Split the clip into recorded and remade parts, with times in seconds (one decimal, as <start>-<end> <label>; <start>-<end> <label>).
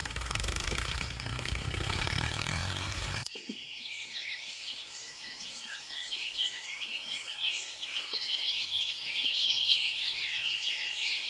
0.0-11.3 remade